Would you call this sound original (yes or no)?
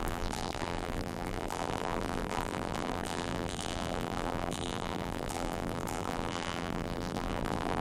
no